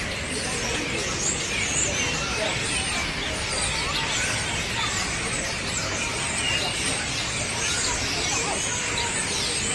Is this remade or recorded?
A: recorded